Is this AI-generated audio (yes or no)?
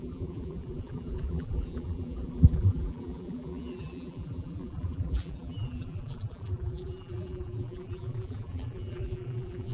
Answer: yes